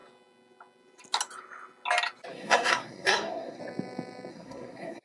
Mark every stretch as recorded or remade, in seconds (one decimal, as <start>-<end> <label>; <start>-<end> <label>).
0.0-2.3 recorded; 2.3-3.6 remade; 3.6-4.3 recorded; 4.3-5.0 remade